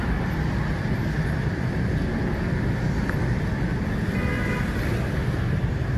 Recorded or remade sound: recorded